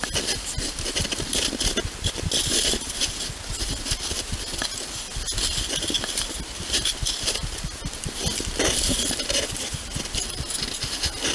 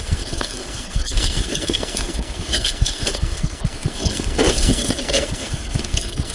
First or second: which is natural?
first